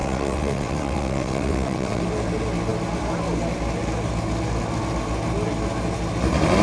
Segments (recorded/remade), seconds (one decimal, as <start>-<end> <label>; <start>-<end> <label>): 0.0-2.0 remade; 2.0-6.6 recorded